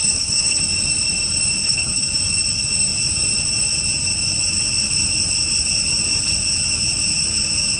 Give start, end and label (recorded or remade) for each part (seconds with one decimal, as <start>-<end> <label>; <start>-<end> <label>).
0.0-0.6 remade; 0.6-1.6 recorded; 1.6-2.1 remade; 2.1-7.8 recorded